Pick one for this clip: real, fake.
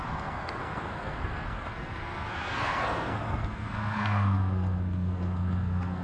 fake